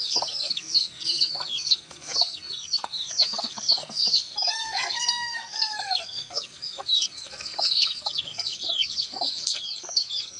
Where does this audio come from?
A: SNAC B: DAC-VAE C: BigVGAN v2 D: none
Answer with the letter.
A